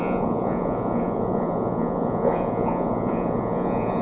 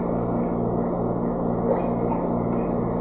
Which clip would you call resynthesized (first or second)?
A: first